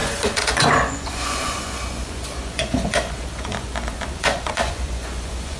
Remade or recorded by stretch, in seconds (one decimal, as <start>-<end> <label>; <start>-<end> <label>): 0.0-5.6 remade